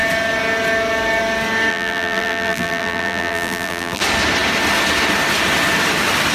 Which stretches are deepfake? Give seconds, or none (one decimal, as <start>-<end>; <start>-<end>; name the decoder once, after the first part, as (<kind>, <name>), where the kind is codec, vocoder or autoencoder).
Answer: 1.7-4.0 (vocoder, BigVGAN v2)